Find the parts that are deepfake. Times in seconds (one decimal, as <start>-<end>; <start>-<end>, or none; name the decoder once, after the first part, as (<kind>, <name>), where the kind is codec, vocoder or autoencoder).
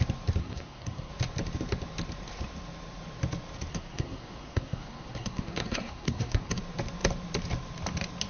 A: 0.4-1.1 (codec, SNAC); 3.7-6.6